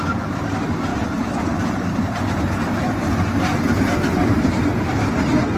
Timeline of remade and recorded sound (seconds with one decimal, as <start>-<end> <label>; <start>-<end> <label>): 0.0-0.9 recorded; 0.9-2.4 remade; 2.4-4.2 recorded; 4.2-5.0 remade; 5.0-5.6 recorded